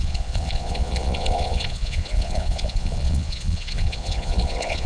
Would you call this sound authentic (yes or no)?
no